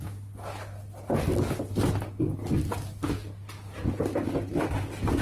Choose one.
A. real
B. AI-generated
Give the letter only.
A